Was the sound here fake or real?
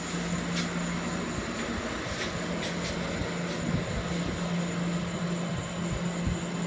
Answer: real